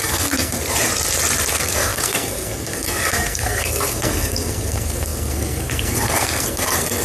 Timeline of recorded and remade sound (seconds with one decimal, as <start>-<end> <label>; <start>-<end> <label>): 0.0-0.6 remade; 0.6-1.5 recorded; 1.5-7.0 remade